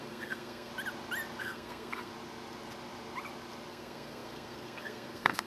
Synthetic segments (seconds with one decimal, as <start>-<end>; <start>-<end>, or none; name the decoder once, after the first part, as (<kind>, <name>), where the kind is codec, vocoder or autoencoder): 0.0-0.7 (codec, SNAC); 1.4-2.1; 3.7-5.5